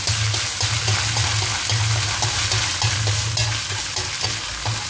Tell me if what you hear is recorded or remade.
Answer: recorded